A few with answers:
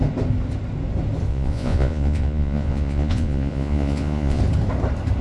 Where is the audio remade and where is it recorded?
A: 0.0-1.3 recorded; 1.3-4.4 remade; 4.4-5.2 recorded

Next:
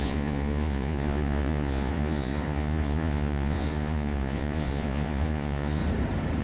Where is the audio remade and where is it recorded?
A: 0.0-5.8 remade; 5.8-6.4 recorded

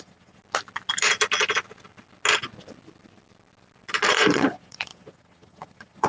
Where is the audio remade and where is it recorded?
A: 0.0-0.4 remade; 0.4-4.1 recorded; 4.1-6.1 remade

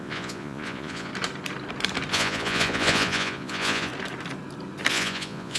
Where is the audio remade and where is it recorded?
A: 0.0-1.1 remade; 1.1-2.1 recorded; 2.1-3.9 remade; 3.9-4.9 recorded; 4.9-5.6 remade

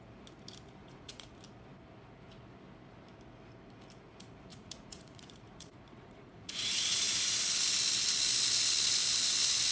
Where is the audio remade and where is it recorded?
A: 0.0-0.8 recorded; 0.8-1.3 remade; 1.3-4.5 recorded; 4.5-7.4 remade; 7.4-9.7 recorded

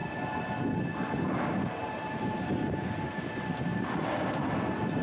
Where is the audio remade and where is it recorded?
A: 0.0-5.0 recorded

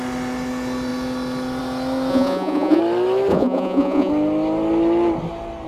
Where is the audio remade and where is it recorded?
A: 0.0-2.1 recorded; 2.1-2.8 remade; 2.8-3.3 recorded; 3.3-4.1 remade; 4.1-5.7 recorded